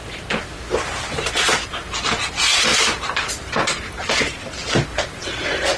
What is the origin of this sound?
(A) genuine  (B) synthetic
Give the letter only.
A